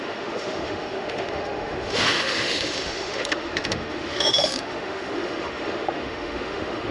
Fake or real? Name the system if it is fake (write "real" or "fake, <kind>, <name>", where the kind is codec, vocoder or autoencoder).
fake, autoencoder, DAC-VAE